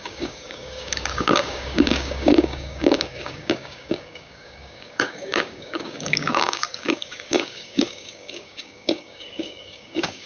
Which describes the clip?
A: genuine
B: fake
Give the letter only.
B